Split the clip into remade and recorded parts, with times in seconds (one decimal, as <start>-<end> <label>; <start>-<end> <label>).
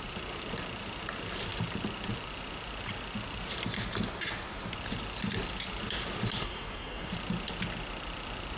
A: 0.0-6.4 recorded; 6.4-7.1 remade; 7.1-8.6 recorded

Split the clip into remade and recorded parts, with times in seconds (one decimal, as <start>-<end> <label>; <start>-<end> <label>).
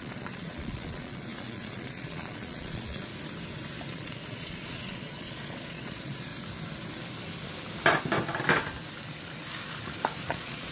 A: 0.0-3.1 remade; 3.1-3.9 recorded; 3.9-6.3 remade; 6.3-10.2 recorded; 10.2-10.7 remade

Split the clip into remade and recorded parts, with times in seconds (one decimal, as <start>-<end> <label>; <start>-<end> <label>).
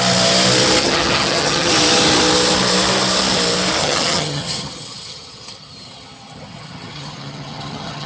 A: 0.0-0.8 recorded; 0.8-1.7 remade; 1.7-3.8 recorded; 3.8-8.1 remade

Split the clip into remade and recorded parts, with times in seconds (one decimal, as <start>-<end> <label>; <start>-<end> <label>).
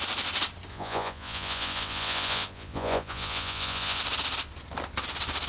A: 0.0-0.7 recorded; 0.7-4.0 remade; 4.0-5.5 recorded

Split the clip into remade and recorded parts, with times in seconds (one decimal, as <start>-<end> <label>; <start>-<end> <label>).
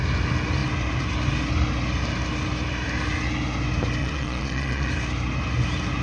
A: 0.0-4.0 recorded; 4.0-4.9 remade; 4.9-6.0 recorded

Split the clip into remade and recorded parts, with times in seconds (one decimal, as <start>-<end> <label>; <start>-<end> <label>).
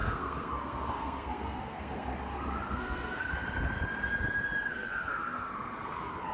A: 0.0-2.1 remade; 2.1-2.7 recorded; 2.7-3.3 remade; 3.3-4.7 recorded; 4.7-6.3 remade